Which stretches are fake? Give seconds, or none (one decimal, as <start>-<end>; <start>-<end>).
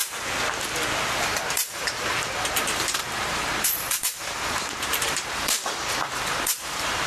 1.2-7.1